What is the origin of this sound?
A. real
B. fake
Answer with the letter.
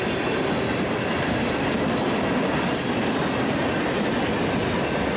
A